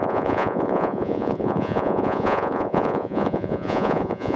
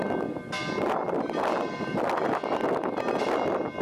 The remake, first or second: first